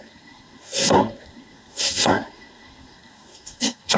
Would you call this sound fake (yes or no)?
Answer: yes